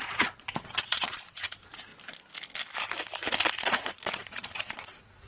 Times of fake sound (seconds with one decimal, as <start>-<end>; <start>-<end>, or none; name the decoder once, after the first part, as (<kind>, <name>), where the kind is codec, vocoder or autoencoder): 0.0-1.9 (vocoder, Vocos); 3.5-5.3

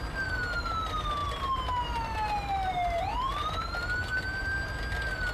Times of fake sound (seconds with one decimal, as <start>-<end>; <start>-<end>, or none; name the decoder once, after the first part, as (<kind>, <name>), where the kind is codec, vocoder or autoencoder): none

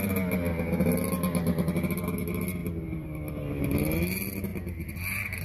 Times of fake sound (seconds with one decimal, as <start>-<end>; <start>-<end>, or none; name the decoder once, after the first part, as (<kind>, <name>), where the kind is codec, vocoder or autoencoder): 2.6-3.6 (vocoder, BigVGAN v2); 4.5-5.4

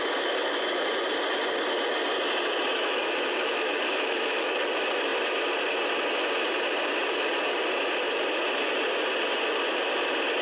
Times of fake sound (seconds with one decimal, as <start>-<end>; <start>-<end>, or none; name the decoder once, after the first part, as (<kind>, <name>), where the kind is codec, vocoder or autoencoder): 2.7-4.6 (autoencoder, DAC-VAE)

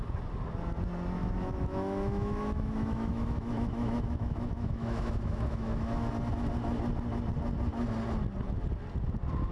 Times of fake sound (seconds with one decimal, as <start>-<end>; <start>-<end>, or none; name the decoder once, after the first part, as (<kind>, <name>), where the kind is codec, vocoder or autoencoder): 1.2-6.1 (autoencoder, DAC-VAE)

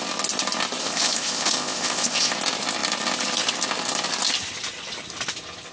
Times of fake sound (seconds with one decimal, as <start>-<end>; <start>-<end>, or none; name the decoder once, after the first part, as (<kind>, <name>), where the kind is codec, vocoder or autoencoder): 0.8-2.3 (codec, ZipCodec)